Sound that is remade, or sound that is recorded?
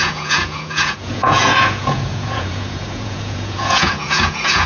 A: remade